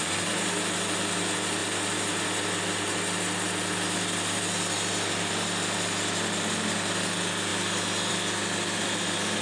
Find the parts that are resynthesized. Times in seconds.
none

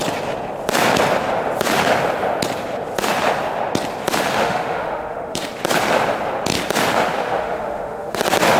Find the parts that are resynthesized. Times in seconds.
4.3-5.5 (autoencoder, DAC-VAE); 7.2-8.2

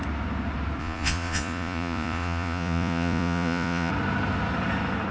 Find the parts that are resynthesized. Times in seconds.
0.8-3.9 (vocoder, Vocos)

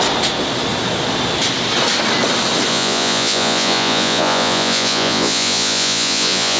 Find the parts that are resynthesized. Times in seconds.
2.7-6.6 (vocoder, Vocos)

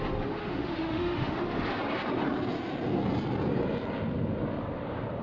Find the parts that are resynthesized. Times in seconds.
0.4-1.4 (autoencoder, DAC-VAE)

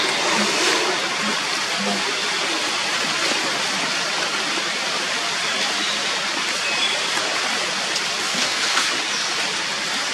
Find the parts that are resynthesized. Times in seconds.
8.3-8.9 (codec, SNAC)

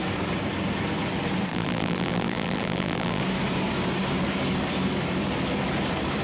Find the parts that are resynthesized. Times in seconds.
1.5-3.2 (vocoder, BigVGAN v2)